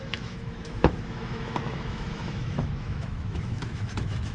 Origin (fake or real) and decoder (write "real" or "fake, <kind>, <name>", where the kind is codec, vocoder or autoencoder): fake, autoencoder, DAC-VAE